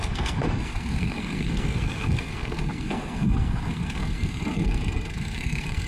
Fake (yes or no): yes